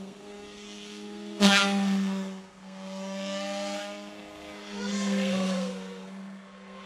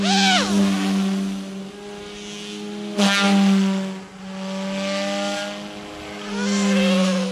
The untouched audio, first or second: second